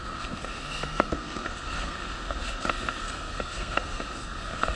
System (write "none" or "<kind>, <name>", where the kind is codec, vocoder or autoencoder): codec, SNAC